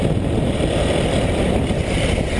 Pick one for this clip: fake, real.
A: real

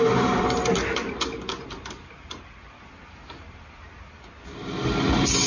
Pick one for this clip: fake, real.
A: real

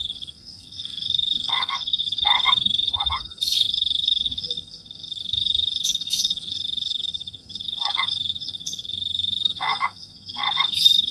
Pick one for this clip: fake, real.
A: fake